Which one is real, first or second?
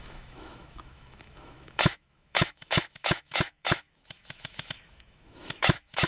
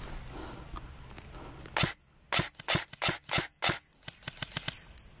second